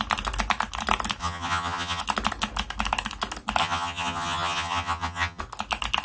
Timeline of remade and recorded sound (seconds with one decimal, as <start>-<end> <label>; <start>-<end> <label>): 0.0-1.2 recorded; 1.2-2.0 remade; 2.0-3.6 recorded; 3.6-5.4 remade; 5.4-6.0 recorded